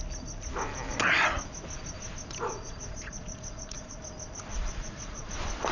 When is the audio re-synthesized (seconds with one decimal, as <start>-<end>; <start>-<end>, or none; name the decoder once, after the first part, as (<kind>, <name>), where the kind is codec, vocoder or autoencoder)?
2.5-4.0 (vocoder, Vocos); 4.5-5.3

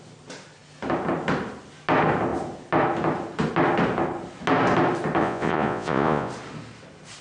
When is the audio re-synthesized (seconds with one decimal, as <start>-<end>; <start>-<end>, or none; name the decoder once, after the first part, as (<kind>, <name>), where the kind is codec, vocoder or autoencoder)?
5.2-6.3 (vocoder, Vocos)